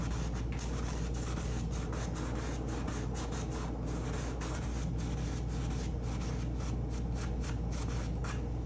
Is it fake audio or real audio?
real